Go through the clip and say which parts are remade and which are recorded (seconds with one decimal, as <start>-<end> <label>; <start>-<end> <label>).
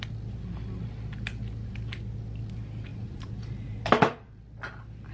0.0-2.9 recorded; 2.9-4.4 remade; 4.4-5.1 recorded